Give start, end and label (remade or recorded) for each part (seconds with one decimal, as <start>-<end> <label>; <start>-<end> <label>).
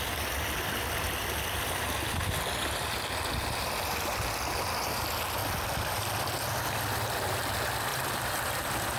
0.0-1.2 recorded; 1.2-4.4 remade; 4.4-5.4 recorded; 5.4-7.3 remade; 7.3-7.9 recorded; 7.9-9.0 remade